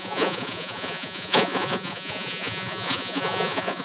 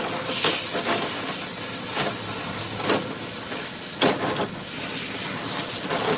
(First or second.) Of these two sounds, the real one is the second